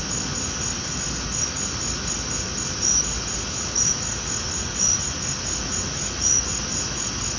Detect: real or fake real